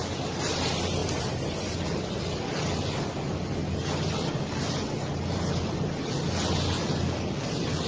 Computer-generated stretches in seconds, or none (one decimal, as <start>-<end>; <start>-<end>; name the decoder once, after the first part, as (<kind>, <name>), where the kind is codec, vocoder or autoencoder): none

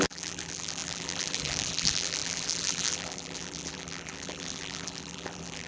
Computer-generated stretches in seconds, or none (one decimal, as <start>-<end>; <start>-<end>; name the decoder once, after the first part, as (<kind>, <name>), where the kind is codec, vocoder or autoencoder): 0.0-5.7 (vocoder, BigVGAN v2)

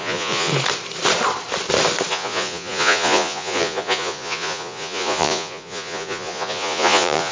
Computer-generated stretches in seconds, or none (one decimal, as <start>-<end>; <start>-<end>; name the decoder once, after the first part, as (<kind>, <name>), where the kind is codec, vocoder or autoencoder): 0.0-0.5 (vocoder, Vocos); 2.1-7.3

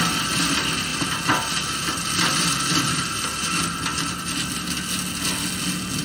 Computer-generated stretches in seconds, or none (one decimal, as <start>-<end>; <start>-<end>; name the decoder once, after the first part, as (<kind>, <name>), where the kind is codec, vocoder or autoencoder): none

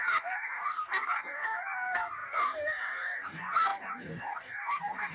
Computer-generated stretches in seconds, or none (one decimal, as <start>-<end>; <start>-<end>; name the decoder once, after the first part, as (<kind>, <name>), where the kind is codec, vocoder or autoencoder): 0.0-5.1 (codec, DAC)

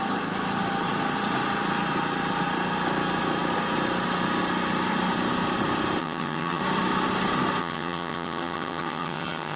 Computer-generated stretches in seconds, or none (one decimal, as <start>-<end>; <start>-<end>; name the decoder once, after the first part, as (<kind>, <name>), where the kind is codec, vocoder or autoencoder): 6.0-6.6 (vocoder, HiFi-GAN); 7.6-9.6

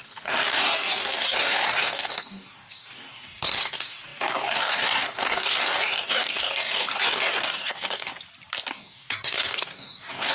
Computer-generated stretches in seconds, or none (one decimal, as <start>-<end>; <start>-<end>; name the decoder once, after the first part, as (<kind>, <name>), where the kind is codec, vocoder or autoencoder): 0.0-8.1 (codec, DAC); 8.7-10.3

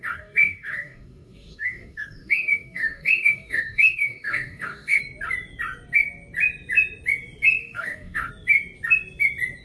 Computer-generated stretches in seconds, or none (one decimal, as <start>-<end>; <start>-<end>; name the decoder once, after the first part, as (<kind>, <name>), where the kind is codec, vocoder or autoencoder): 0.0-5.0 (codec, DAC); 7.6-8.3